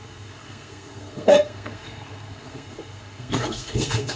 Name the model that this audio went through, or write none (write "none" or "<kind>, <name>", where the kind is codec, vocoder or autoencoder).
codec, SNAC